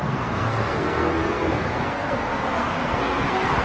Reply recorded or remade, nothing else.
remade